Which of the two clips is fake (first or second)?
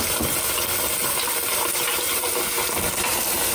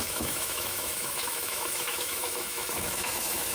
second